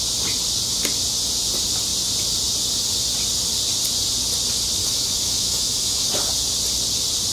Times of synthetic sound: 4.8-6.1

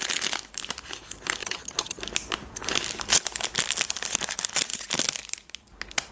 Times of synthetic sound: 1.4-2.0

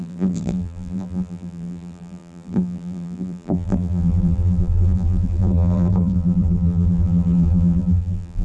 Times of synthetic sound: 0.0-8.4